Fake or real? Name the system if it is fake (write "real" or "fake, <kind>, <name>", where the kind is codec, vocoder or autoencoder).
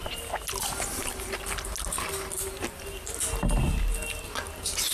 real